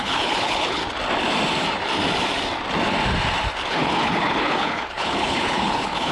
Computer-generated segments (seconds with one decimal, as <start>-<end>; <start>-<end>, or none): 0.0-0.8; 3.7-6.1